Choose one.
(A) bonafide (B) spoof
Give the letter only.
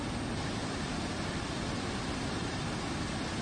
A